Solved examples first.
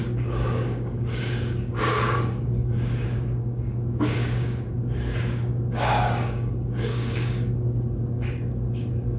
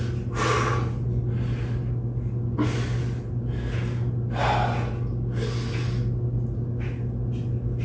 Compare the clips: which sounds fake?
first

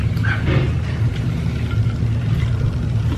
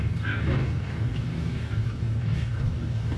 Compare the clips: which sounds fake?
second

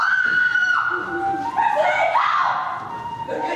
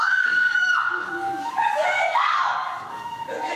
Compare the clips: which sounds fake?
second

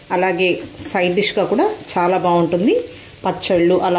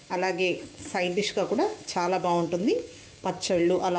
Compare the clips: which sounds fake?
second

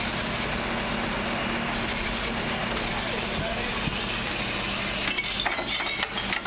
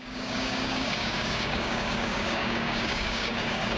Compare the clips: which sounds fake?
second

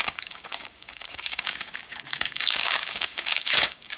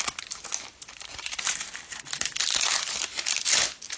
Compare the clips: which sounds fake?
first